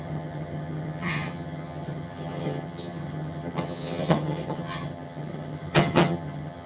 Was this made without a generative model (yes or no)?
no